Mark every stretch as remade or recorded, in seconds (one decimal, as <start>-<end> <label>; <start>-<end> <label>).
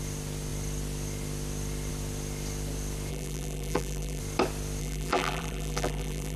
0.0-3.1 recorded; 3.1-4.2 remade; 4.2-4.8 recorded; 4.8-6.4 remade